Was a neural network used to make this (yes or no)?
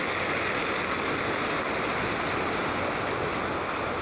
no